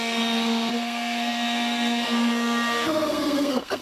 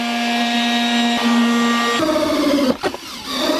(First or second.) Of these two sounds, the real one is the second